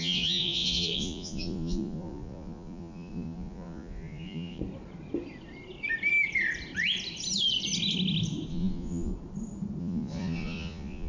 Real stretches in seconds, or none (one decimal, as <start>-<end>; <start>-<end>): 4.6-8.5; 9.1-9.8